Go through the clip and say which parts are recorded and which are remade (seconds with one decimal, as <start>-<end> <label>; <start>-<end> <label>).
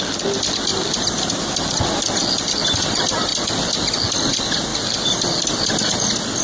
0.0-6.4 recorded